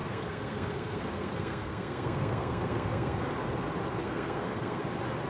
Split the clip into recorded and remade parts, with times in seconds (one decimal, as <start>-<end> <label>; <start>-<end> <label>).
0.0-3.2 remade; 3.2-4.0 recorded; 4.0-4.8 remade; 4.8-5.3 recorded